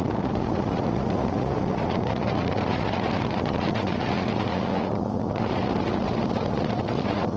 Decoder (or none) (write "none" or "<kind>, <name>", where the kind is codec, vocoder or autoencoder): vocoder, Vocos